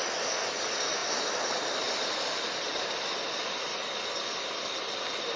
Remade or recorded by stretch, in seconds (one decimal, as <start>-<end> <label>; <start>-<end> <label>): 0.0-1.0 recorded; 1.0-1.6 remade; 1.6-5.4 recorded